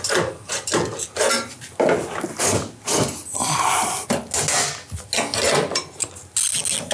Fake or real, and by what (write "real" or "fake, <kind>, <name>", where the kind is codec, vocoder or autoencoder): real